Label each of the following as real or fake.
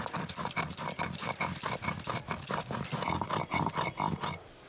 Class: real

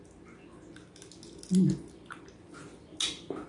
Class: real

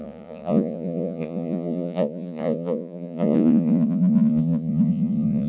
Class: fake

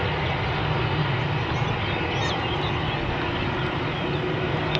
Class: real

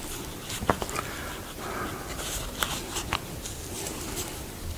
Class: real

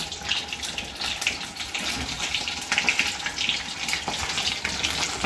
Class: real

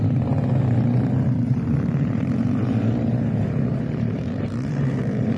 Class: fake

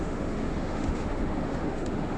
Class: fake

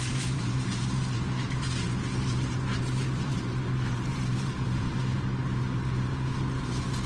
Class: fake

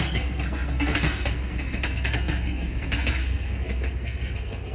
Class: fake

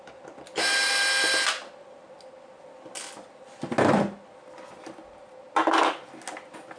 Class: real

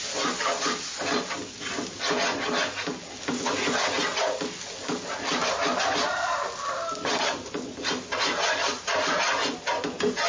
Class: real